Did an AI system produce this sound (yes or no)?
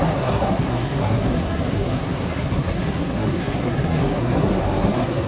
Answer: yes